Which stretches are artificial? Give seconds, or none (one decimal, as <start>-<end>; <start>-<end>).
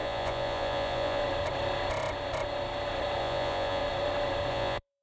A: 0.0-1.2; 3.2-3.8; 4.5-5.0